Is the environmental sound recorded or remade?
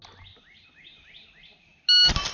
recorded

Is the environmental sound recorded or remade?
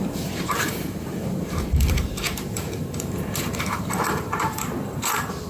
remade